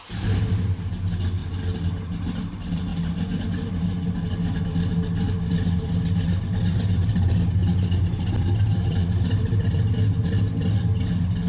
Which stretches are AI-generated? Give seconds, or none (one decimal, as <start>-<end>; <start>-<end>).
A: none